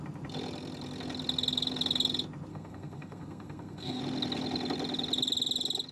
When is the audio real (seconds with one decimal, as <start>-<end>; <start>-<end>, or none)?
0.0-2.5; 4.0-5.9